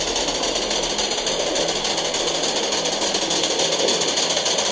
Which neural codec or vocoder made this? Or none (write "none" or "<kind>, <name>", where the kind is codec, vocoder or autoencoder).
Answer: none